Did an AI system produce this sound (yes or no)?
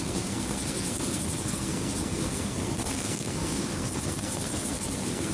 yes